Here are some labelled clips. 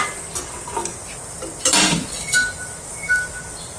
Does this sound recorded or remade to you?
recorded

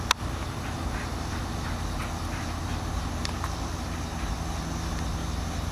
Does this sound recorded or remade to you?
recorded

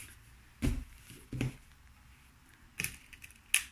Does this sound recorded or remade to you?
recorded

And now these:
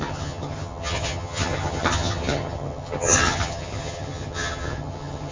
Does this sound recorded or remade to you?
remade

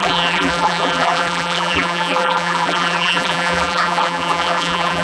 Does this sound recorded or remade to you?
remade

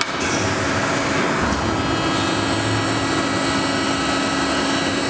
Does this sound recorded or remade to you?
recorded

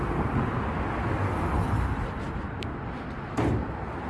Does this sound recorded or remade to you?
recorded